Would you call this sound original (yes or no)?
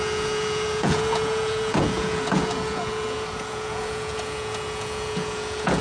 no